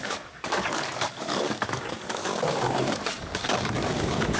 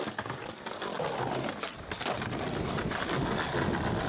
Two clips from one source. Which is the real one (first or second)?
second